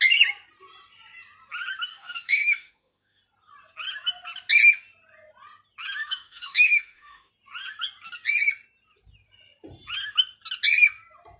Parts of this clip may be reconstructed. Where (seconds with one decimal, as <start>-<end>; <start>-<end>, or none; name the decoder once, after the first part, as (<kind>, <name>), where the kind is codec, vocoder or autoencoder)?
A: 1.9-3.2 (autoencoder, DAC-VAE); 6.0-7.3